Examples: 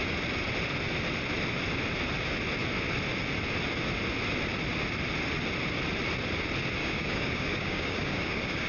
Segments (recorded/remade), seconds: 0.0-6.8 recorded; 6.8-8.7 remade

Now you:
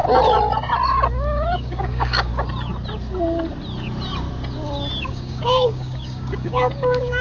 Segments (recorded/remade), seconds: 0.0-1.5 recorded; 1.5-2.3 remade; 2.3-5.0 recorded; 5.0-7.2 remade

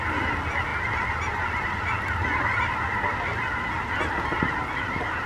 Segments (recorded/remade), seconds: 0.0-5.3 recorded

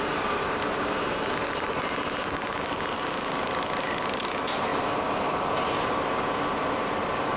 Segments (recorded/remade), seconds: 0.0-7.4 recorded

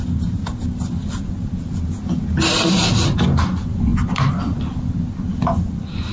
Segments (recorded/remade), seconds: 0.0-6.1 recorded